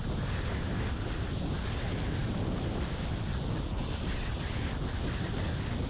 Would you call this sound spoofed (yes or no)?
no